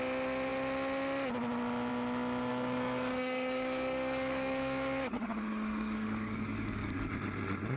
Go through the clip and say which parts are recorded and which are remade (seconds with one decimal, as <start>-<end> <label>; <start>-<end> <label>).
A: 0.0-2.5 recorded; 2.5-7.1 remade; 7.1-7.8 recorded